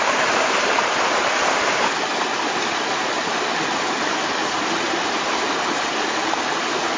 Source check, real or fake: real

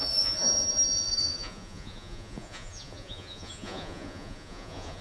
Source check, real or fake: fake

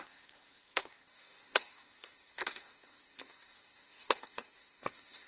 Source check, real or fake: fake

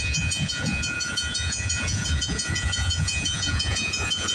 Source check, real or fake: fake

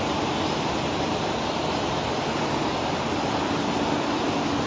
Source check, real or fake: real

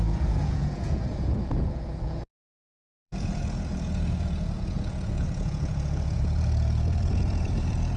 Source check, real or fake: fake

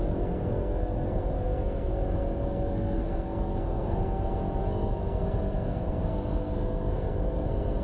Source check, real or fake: fake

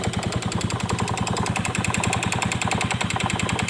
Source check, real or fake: real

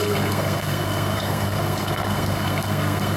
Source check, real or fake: fake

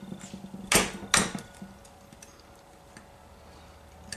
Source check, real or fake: real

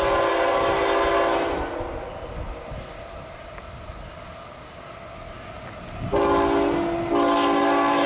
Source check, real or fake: real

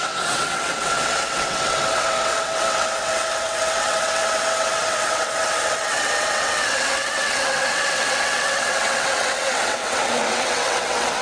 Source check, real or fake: fake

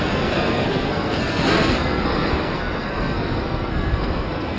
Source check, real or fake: fake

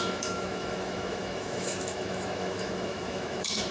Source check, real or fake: fake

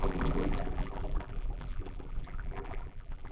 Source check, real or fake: fake